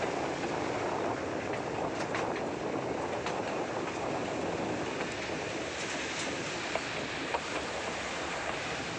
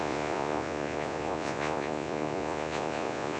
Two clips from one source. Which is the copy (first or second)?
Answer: second